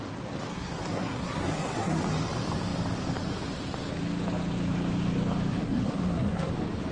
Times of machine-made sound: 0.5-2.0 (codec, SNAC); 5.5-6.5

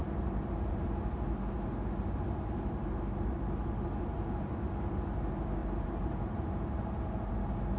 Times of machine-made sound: 5.6-7.3 (vocoder, BigVGAN v2)

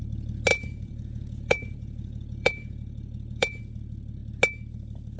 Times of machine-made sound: 0.5-3.6 (vocoder, Vocos)

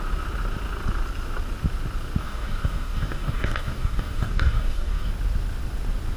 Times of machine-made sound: 2.2-5.1 (codec, DAC)